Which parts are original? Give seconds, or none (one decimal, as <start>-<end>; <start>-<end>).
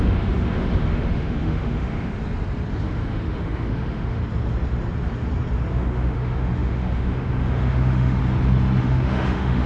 2.2-2.8; 4.2-5.7; 8.2-8.8